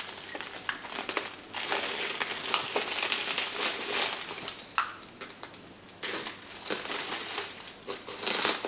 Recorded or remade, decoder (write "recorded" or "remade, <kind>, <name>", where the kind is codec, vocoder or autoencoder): recorded